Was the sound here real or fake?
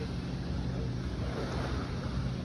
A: real